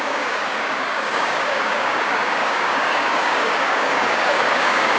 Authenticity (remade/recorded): remade